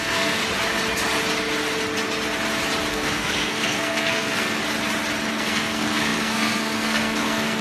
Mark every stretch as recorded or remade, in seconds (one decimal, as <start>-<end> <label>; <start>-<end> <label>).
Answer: 0.0-0.4 remade; 0.4-2.9 recorded; 2.9-4.6 remade; 4.6-5.3 recorded; 5.3-7.6 remade